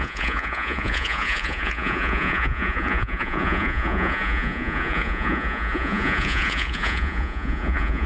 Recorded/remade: remade